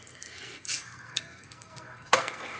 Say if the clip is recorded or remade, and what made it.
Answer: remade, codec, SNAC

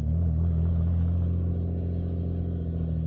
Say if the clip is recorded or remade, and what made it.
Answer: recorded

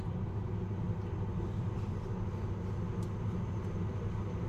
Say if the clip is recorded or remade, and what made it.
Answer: recorded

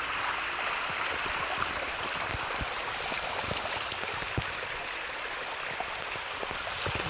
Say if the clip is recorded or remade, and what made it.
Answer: recorded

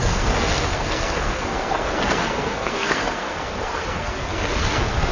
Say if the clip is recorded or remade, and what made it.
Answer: remade, codec, SNAC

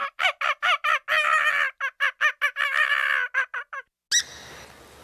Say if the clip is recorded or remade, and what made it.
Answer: recorded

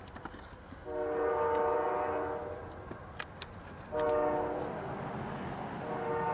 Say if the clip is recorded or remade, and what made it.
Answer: recorded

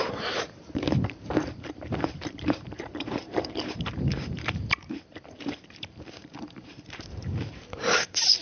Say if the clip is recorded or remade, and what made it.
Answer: remade, vocoder, BigVGAN v2